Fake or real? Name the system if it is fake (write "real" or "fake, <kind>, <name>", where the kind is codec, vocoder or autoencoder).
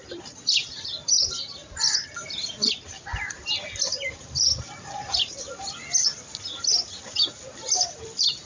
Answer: real